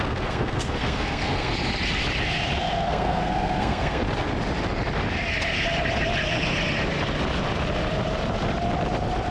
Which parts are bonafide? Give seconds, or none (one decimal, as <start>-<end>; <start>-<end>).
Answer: 1.5-2.6; 4.0-9.3